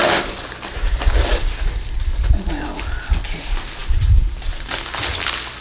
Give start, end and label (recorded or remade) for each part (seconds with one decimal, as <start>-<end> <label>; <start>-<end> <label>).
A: 0.0-5.6 recorded